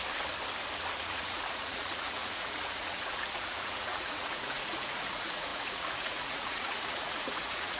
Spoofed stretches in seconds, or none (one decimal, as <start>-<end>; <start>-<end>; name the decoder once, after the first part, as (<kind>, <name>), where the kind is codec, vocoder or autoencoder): 1.0-7.8 (vocoder, Vocos)